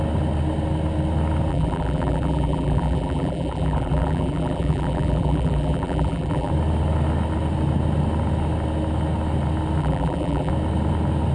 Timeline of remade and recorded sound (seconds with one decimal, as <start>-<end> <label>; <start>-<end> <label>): 0.0-1.5 recorded; 1.5-6.5 remade; 6.5-9.8 recorded; 9.8-10.5 remade; 10.5-11.3 recorded